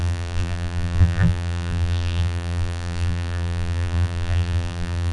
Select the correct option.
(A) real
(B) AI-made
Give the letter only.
B